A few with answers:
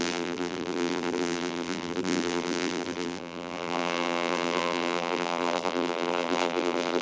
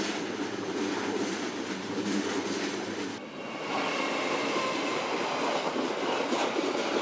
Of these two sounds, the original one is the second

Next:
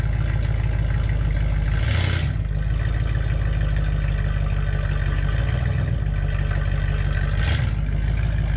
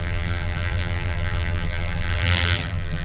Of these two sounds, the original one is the first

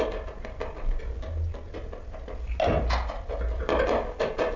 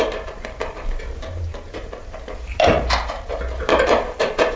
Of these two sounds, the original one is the first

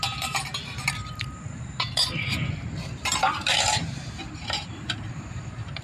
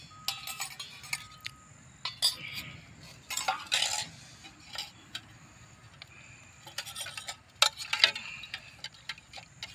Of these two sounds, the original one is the second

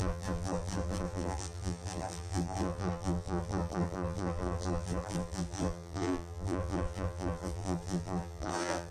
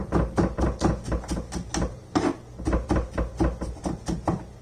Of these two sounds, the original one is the second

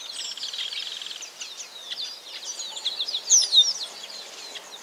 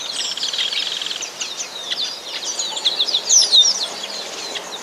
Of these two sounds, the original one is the first